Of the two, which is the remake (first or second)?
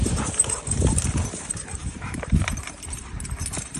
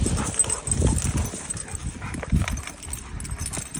first